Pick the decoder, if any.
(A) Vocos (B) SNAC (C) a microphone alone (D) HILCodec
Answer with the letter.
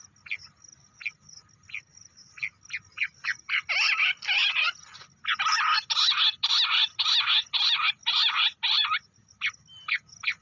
C